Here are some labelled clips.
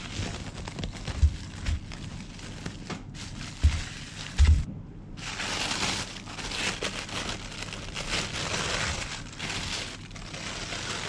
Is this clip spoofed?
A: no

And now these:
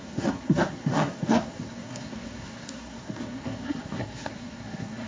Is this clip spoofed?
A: yes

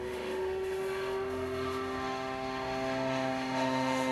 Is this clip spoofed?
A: yes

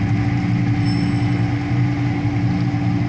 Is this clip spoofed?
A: no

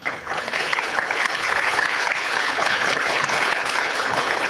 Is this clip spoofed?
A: yes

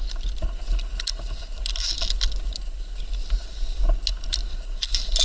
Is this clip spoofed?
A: no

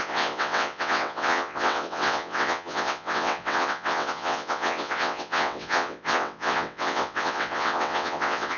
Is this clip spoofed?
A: yes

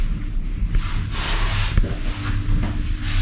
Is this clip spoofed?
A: no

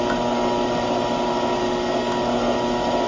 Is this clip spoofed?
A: no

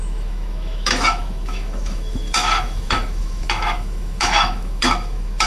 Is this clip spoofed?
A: yes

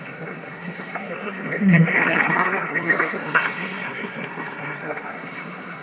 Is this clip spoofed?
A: yes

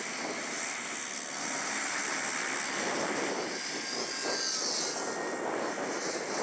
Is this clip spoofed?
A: no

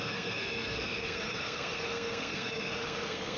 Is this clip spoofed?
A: yes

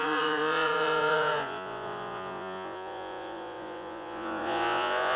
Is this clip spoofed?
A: yes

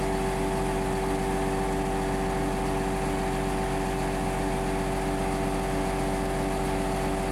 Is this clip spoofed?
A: no